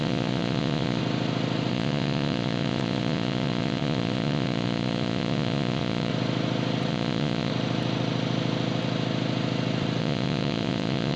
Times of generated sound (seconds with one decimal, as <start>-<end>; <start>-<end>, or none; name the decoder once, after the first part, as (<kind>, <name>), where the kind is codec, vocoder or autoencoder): 0.0-1.0 (vocoder, Vocos); 1.7-6.1; 6.9-7.5; 10.0-11.2